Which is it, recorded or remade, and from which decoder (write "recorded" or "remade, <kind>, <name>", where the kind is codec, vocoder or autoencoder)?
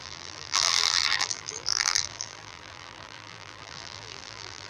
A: remade, vocoder, BigVGAN v2